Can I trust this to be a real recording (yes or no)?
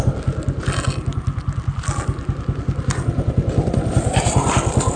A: yes